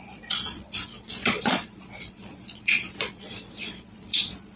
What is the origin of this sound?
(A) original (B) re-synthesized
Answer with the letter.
B